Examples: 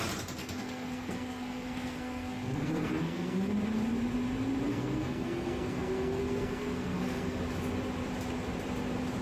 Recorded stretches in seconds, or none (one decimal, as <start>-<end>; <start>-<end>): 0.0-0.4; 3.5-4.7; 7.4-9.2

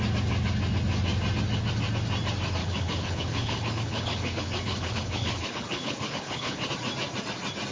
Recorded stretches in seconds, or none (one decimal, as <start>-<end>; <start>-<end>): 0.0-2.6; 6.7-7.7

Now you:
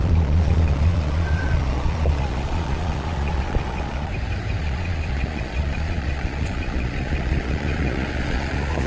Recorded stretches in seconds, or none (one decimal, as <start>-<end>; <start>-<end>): 4.1-4.6